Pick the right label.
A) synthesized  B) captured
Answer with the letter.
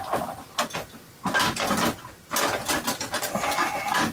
B